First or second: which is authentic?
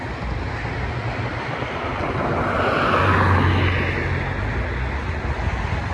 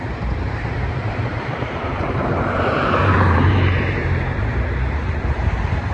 first